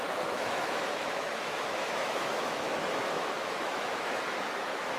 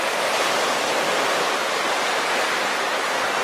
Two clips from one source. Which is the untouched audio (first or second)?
second